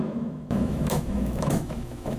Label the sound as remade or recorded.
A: remade